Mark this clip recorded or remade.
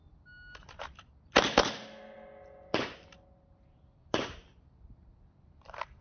recorded